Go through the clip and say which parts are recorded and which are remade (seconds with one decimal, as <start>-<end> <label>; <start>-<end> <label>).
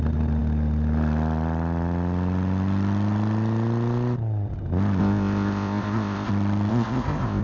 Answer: 0.0-5.0 recorded; 5.0-6.3 remade; 6.3-6.7 recorded; 6.7-7.4 remade